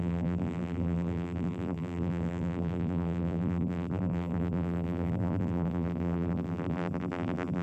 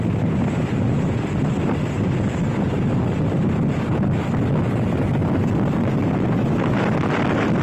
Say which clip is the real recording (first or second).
second